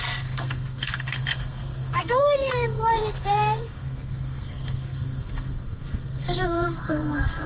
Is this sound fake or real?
fake